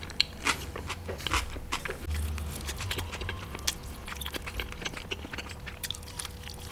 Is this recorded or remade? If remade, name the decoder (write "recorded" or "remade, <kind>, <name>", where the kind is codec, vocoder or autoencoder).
recorded